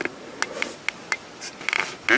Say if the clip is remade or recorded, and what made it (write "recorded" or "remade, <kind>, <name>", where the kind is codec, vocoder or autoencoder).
recorded